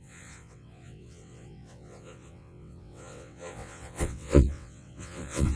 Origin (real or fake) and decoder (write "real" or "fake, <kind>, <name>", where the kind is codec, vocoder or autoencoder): fake, vocoder, WaveNeXt